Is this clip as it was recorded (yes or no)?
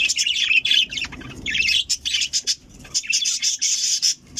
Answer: no